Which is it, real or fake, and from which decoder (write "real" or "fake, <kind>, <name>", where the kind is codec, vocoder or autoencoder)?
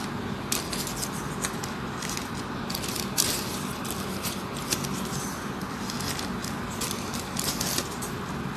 real